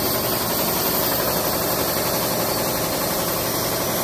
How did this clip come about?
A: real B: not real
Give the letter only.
A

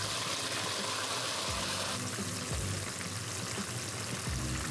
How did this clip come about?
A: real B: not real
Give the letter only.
A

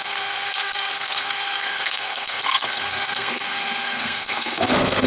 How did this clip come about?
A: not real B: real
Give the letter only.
A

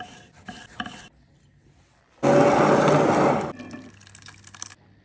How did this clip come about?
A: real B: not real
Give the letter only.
A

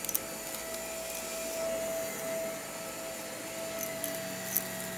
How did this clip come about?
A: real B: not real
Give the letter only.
A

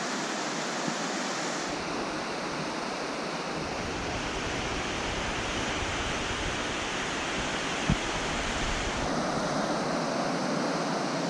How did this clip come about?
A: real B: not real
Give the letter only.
A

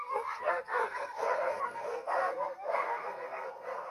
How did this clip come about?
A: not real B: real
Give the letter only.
A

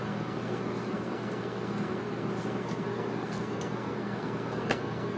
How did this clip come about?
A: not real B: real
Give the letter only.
A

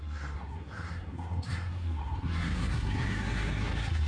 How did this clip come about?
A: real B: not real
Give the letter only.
B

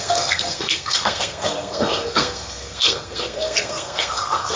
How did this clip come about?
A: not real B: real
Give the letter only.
A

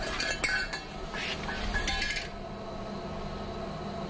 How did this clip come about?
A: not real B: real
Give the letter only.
B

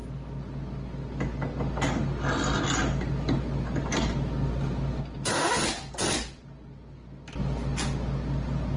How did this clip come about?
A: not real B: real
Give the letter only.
B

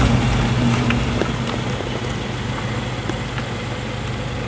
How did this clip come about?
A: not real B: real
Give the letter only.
B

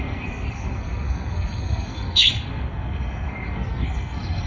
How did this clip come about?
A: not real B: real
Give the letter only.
A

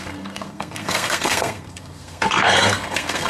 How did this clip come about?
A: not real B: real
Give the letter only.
A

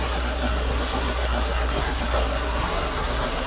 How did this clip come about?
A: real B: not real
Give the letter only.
B